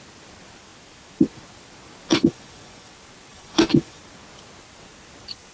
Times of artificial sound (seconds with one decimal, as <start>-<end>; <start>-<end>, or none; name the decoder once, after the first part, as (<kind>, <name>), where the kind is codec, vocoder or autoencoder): 2.1-2.9 (vocoder, Vocos); 3.3-4.0